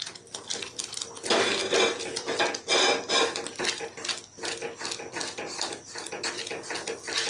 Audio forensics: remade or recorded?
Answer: recorded